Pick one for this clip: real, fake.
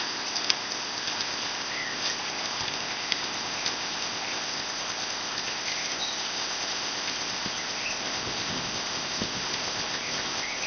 fake